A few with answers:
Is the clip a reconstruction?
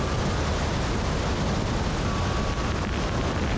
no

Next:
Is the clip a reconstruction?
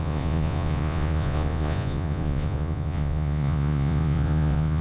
yes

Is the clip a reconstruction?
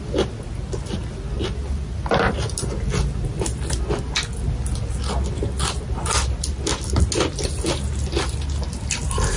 no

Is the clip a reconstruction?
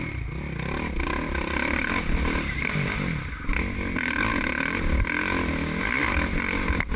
no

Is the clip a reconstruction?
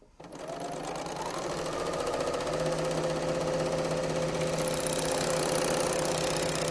no